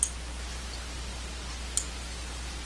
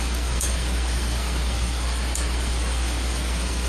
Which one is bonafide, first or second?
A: first